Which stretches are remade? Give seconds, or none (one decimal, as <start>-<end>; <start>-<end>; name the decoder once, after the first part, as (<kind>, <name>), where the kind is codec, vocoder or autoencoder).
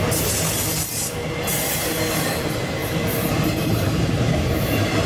1.2-2.2 (vocoder, BigVGAN v2); 2.8-5.1